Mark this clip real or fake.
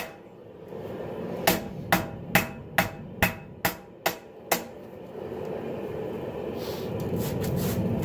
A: real